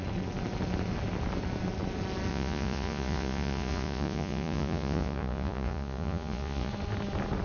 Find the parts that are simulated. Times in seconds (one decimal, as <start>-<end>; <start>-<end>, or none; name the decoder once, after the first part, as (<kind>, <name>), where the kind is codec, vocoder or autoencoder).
2.3-6.7 (vocoder, Vocos)